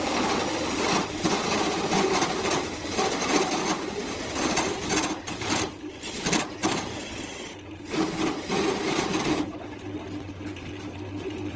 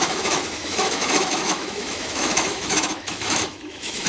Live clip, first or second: first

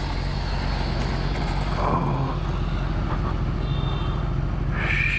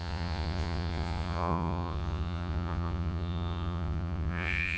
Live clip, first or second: first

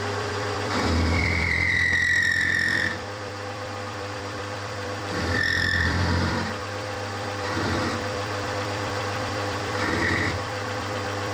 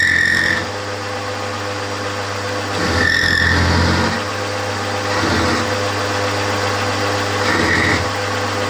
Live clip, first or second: second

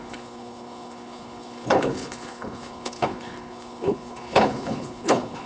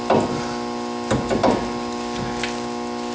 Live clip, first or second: second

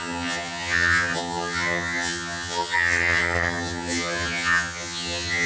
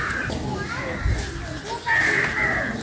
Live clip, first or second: second